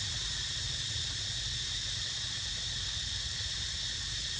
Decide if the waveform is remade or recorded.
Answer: recorded